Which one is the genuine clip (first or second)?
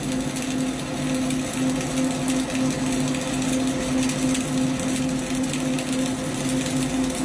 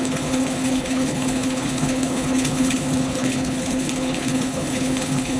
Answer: first